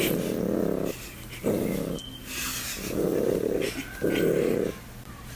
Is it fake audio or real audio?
real